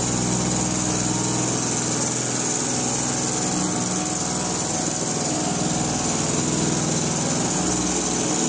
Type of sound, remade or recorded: recorded